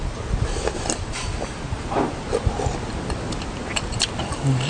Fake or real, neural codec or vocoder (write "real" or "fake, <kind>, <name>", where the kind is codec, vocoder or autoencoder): real